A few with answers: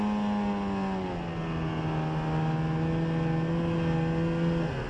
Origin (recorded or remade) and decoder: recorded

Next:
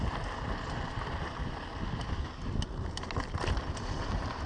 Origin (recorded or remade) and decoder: recorded